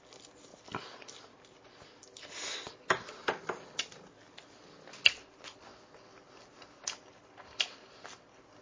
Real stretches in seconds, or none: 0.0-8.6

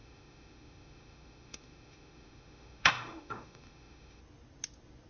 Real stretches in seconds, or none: 4.2-5.1

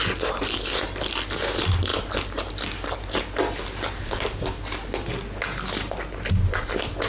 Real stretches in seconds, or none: 0.0-7.1

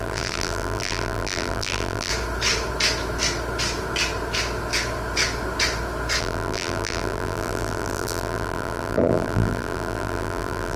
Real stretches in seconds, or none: 2.1-6.2

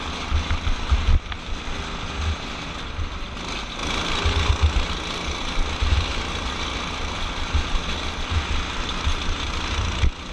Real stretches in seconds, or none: 0.0-10.3